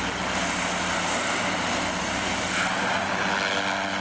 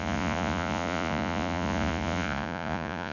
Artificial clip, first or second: second